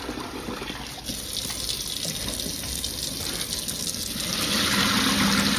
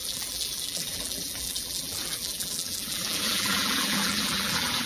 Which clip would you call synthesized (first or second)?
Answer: second